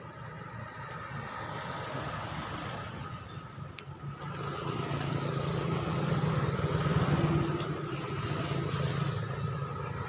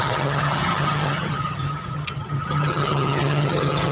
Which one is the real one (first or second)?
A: first